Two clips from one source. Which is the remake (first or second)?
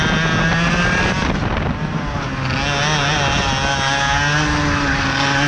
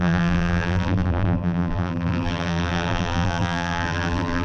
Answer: second